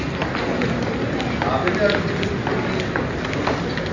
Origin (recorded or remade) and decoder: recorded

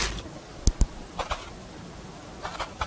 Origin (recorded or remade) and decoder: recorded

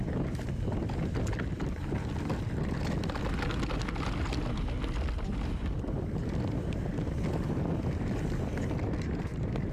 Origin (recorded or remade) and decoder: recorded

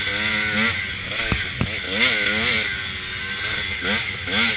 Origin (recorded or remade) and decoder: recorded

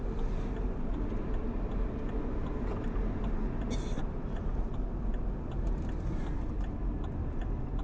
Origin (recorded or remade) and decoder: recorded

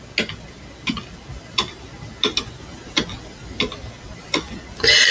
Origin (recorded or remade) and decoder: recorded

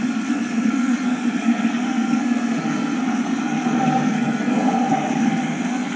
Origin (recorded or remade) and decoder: remade, codec, SNAC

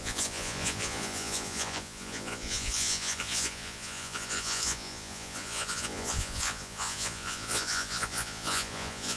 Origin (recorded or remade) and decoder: remade, vocoder, Vocos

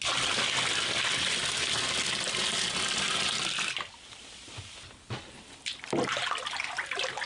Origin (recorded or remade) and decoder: recorded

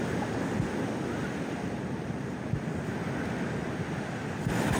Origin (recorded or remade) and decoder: recorded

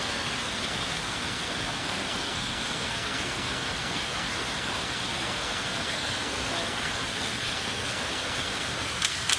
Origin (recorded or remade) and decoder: remade, codec, SNAC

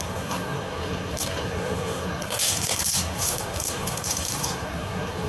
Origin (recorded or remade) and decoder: remade, codec, SNAC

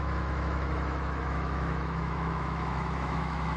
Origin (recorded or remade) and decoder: remade, autoencoder, DAC-VAE